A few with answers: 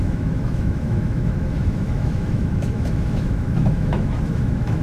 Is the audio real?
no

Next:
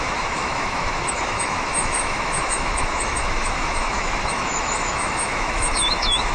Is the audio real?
no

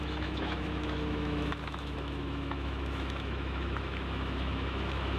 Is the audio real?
no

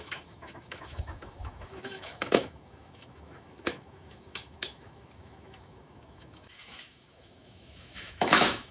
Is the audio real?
no